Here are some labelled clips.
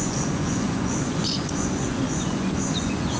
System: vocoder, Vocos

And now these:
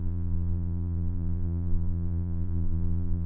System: vocoder, Vocos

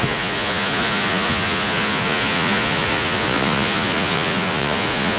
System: vocoder, Vocos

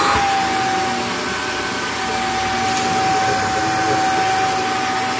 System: none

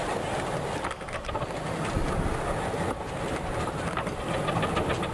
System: none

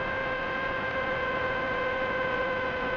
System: vocoder, Vocos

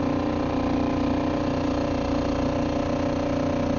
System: none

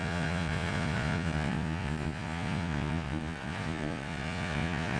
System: vocoder, Vocos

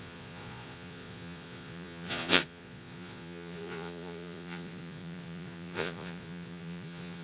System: vocoder, Vocos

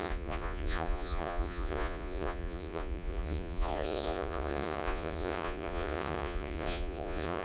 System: vocoder, Vocos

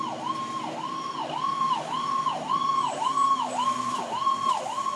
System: none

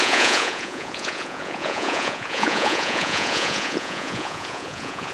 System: vocoder, Vocos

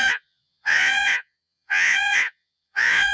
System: vocoder, Vocos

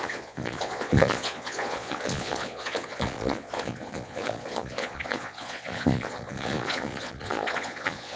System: vocoder, Vocos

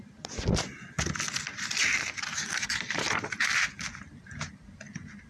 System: none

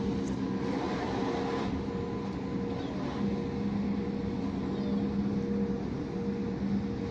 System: none